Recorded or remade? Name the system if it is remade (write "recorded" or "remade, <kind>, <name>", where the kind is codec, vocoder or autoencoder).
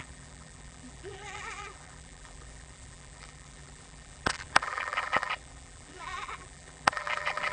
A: remade, vocoder, BigVGAN v2